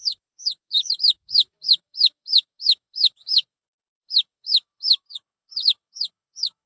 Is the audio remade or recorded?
remade